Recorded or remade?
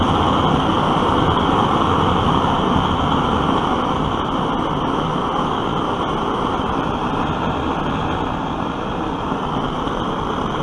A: remade